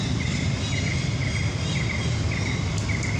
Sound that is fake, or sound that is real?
real